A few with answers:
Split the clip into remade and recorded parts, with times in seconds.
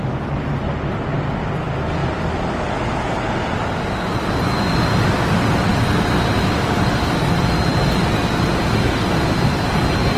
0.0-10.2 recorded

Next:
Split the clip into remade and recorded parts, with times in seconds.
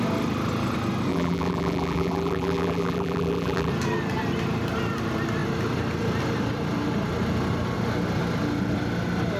0.0-1.1 recorded; 1.1-3.7 remade; 3.7-9.4 recorded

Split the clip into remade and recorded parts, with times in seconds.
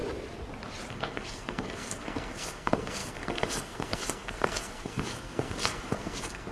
0.0-0.9 recorded; 0.9-6.5 remade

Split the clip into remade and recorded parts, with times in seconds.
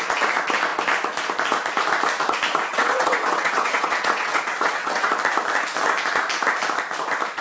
0.0-2.7 recorded; 2.7-5.1 remade; 5.1-7.4 recorded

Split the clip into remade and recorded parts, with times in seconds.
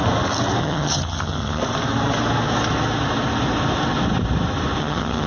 0.0-0.6 recorded; 0.6-1.6 remade; 1.6-4.8 recorded; 4.8-5.3 remade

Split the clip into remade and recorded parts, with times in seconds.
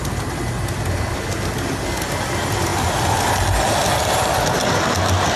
0.0-5.4 recorded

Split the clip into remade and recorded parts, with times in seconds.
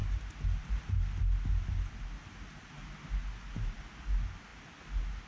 0.0-5.3 recorded